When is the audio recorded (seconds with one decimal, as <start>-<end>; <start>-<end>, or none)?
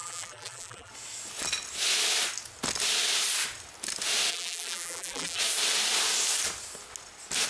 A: 0.9-4.3; 5.4-7.5